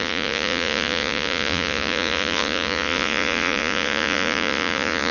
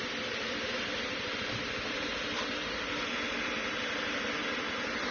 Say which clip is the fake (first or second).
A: first